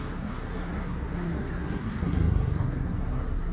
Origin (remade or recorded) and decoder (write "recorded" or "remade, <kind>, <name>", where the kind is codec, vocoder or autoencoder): remade, codec, SNAC